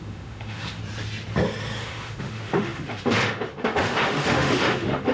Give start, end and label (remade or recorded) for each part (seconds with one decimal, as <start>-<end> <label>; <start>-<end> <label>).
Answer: 0.0-0.8 remade; 0.8-1.8 recorded; 1.8-5.1 remade